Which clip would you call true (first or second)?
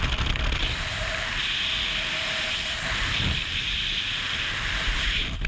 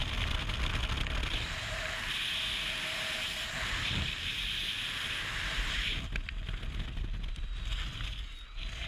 second